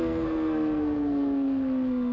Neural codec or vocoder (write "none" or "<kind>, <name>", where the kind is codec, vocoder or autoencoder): codec, SNAC